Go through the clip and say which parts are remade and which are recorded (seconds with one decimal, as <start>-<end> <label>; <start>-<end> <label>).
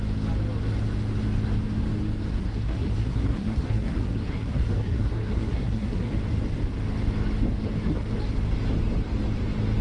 0.0-2.4 recorded; 2.4-6.1 remade; 6.1-9.8 recorded